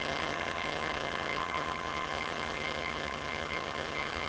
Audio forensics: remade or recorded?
remade